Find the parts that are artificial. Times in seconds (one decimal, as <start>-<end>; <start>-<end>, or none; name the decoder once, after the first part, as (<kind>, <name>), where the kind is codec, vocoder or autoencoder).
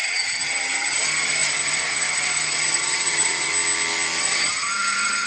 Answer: 0.0-3.5 (vocoder, HiFi-GAN); 4.2-5.3